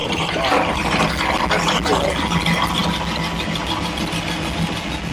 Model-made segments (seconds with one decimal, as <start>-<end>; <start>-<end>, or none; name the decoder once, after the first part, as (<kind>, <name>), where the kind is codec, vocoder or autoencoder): 0.0-1.1 (vocoder, BigVGAN v2)